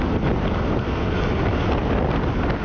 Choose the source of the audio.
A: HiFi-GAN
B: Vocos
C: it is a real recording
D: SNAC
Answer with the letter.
C